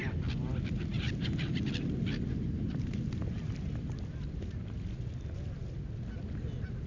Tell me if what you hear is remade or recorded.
recorded